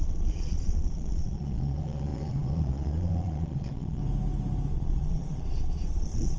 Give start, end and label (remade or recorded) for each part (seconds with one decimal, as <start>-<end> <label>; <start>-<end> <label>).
0.0-4.0 remade; 4.0-4.7 recorded; 4.7-6.4 remade